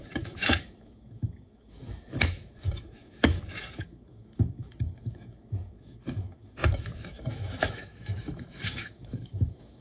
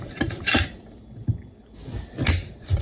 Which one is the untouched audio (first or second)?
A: second